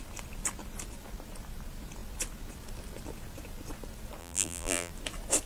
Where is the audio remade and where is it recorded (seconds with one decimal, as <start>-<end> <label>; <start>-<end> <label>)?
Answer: 0.0-4.2 recorded; 4.2-4.9 remade; 4.9-5.5 recorded